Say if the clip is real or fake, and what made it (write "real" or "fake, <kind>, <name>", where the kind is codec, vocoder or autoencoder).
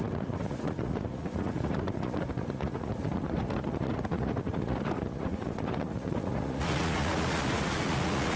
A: fake, vocoder, Vocos